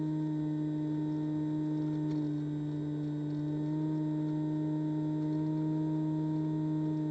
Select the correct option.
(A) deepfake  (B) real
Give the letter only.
B